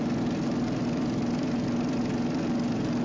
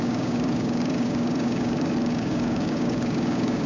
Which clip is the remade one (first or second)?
second